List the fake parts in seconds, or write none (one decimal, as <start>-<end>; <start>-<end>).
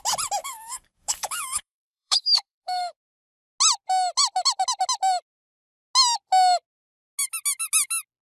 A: 0.4-3.0